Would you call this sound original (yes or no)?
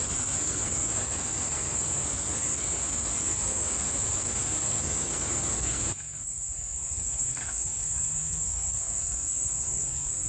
no